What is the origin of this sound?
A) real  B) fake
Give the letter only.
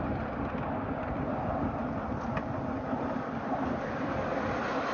A